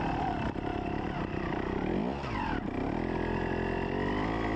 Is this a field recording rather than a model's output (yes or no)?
yes